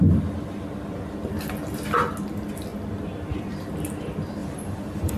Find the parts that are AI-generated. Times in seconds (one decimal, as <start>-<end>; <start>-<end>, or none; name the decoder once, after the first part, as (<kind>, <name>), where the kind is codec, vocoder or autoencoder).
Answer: 4.4-5.2 (vocoder, BigVGAN v2)